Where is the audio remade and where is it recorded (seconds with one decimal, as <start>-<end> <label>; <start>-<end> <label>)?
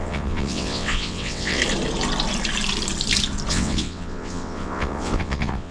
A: 0.0-1.6 remade; 1.6-3.5 recorded; 3.5-5.7 remade